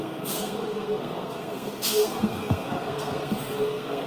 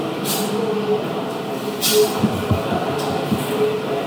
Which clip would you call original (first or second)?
second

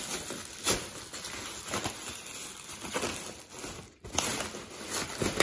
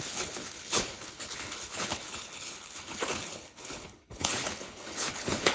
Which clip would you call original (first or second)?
first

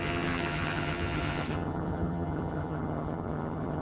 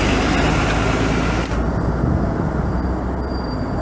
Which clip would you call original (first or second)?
second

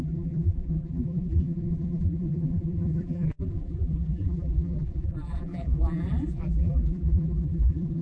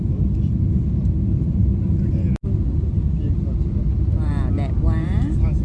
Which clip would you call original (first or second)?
second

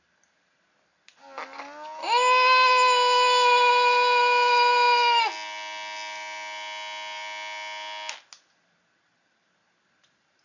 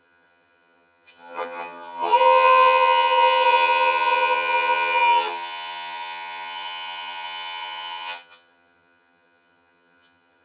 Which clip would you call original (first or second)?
first